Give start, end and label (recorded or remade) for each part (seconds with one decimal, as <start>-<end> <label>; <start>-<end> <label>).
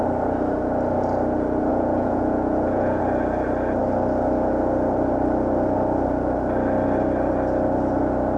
0.0-1.7 recorded; 1.7-3.0 remade; 3.0-8.4 recorded